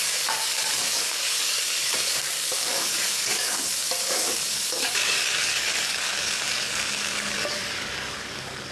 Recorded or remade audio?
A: remade